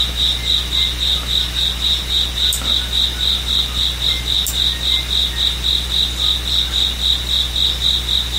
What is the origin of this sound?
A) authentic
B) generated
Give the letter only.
A